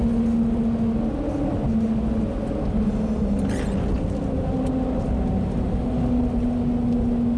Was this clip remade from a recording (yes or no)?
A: no